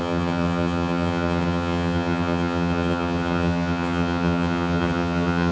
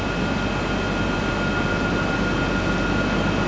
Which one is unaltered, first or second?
second